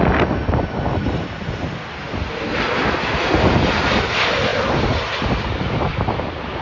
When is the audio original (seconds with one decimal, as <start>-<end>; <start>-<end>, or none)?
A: 0.0-6.6